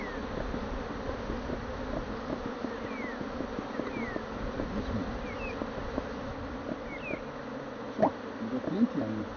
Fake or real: real